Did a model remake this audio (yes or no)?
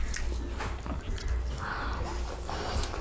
no